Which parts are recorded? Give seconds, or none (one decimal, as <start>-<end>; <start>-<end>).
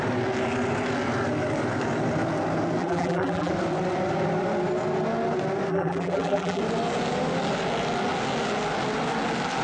0.0-2.8; 3.5-5.7; 6.6-9.6